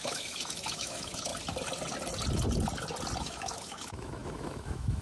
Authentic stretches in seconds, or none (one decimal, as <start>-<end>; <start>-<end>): 1.3-3.2